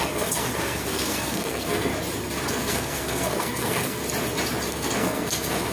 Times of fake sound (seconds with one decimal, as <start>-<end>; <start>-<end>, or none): 0.0-1.9; 2.5-4.0; 4.7-5.7